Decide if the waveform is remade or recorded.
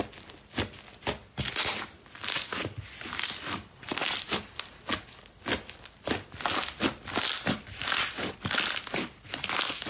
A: recorded